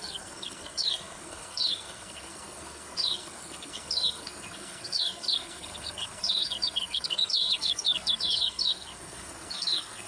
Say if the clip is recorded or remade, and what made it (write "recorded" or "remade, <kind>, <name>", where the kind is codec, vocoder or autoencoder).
remade, codec, SNAC